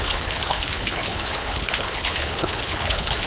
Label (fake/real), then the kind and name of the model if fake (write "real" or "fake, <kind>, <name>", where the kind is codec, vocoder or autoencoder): fake, codec, HILCodec